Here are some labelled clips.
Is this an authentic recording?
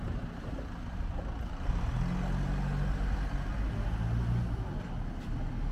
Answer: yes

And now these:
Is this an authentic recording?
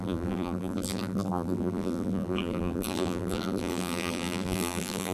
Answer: no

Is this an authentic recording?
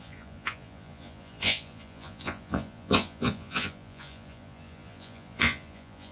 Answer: no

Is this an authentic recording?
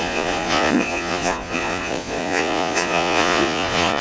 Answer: no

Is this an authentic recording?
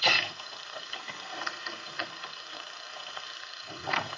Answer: no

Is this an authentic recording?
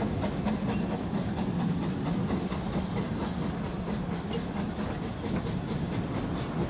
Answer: yes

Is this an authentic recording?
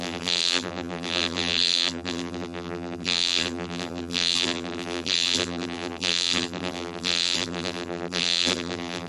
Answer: no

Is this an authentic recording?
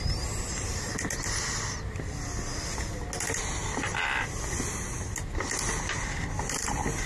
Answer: yes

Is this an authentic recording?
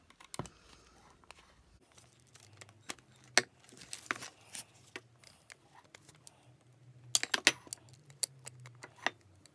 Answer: yes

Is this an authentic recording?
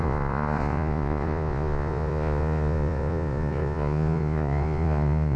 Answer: no